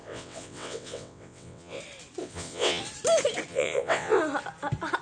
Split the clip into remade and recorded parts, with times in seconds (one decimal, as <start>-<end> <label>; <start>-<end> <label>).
0.0-1.8 remade; 1.8-2.2 recorded; 2.2-2.8 remade; 2.8-3.5 recorded; 3.5-4.2 remade; 4.2-5.0 recorded